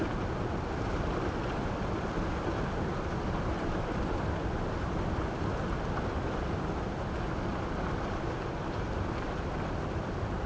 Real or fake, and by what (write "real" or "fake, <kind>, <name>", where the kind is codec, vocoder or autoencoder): real